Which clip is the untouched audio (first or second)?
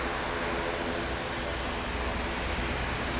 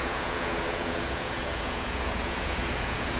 first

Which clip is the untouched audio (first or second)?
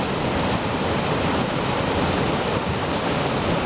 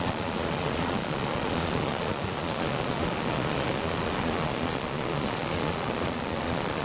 first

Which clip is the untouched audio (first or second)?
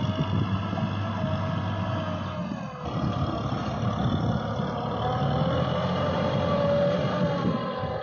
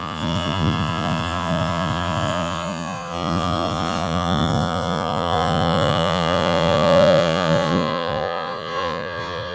first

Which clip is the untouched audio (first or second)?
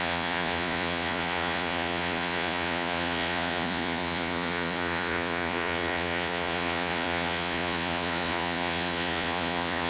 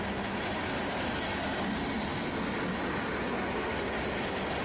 second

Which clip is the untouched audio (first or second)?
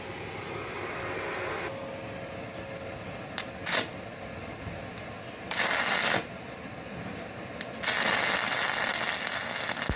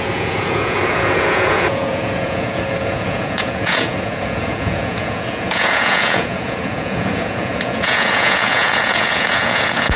first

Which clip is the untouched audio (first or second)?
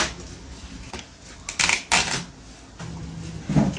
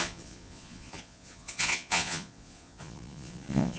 first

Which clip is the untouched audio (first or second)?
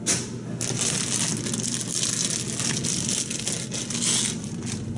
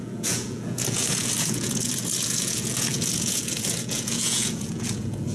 first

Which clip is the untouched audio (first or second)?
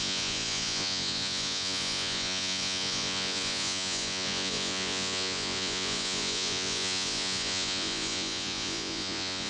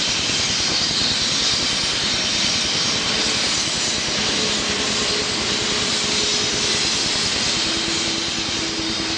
second